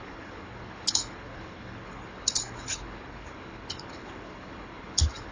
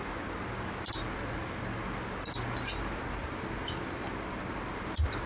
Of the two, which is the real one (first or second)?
second